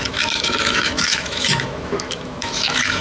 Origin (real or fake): fake